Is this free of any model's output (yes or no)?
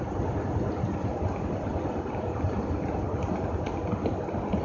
yes